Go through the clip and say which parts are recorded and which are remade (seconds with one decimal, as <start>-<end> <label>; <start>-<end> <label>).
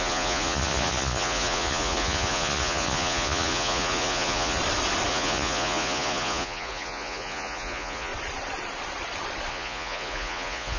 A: 0.0-4.6 remade; 4.6-5.1 recorded; 5.1-8.1 remade; 8.1-9.5 recorded; 9.5-10.8 remade